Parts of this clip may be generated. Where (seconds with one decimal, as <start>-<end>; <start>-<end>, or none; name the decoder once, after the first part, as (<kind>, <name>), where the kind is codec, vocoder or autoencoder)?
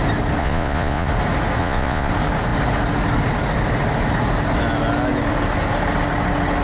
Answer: 0.4-1.1 (vocoder, Vocos); 1.6-2.1